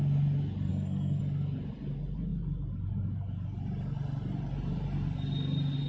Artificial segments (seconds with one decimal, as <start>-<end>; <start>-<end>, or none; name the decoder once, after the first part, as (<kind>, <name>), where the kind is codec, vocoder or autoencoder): 0.7-1.2 (codec, SNAC)